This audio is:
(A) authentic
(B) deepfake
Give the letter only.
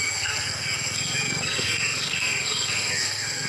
B